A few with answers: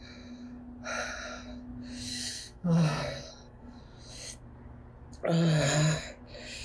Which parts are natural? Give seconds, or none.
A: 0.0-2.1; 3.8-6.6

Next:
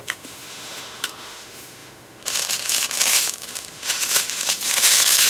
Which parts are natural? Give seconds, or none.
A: none